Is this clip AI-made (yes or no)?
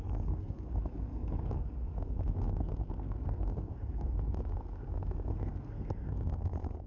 yes